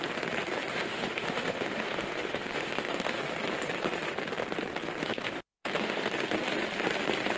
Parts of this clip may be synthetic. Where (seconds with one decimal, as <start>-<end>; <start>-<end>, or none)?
0.7-3.2; 5.0-6.1